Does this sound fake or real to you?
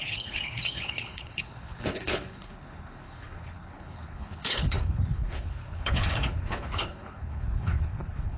fake